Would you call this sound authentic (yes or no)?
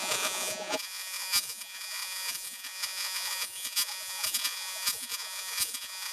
no